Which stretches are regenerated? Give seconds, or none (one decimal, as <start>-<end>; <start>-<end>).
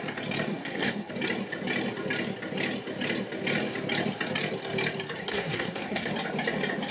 0.5-1.1; 5.2-6.1